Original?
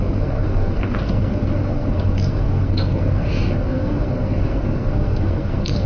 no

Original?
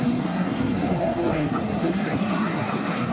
no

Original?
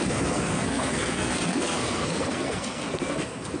no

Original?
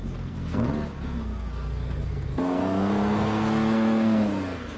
no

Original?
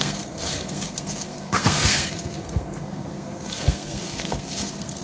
no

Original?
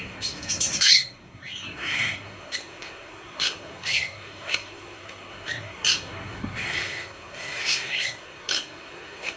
no